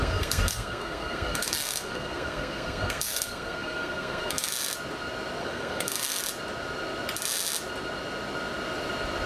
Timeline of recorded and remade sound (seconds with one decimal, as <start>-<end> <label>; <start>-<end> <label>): 0.0-4.5 remade; 4.5-5.4 recorded; 5.4-6.2 remade; 6.2-9.3 recorded